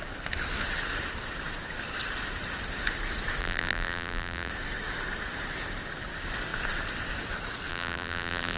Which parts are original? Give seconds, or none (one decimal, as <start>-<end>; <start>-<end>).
0.0-3.4; 4.5-7.7